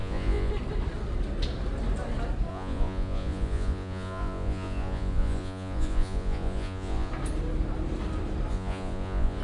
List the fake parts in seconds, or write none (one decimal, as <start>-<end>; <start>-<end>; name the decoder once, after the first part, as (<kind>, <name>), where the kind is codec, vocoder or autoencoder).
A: 0.0-0.5 (vocoder, Vocos); 2.5-7.1; 8.5-9.4